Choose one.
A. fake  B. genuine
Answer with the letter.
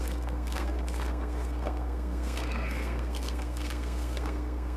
A